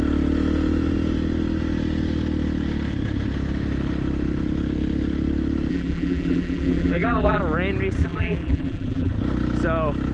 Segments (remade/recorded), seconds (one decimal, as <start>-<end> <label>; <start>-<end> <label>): 0.0-5.7 recorded; 5.7-7.4 remade; 7.4-8.0 recorded; 8.0-9.1 remade; 9.1-10.1 recorded